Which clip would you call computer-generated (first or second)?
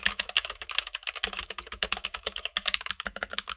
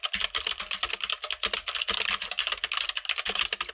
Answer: first